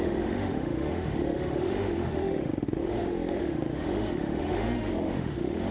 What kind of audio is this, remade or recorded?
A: remade